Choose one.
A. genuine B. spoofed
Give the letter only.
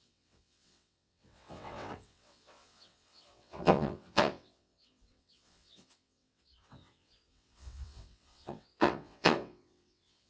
B